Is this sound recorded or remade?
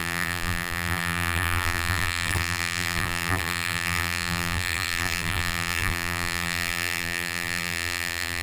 remade